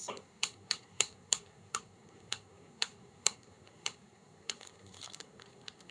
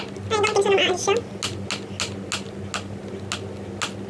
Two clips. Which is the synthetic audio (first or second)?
first